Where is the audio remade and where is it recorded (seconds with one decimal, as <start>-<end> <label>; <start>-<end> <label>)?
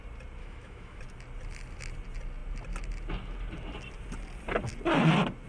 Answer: 0.0-0.4 recorded; 0.4-1.0 remade; 1.0-5.5 recorded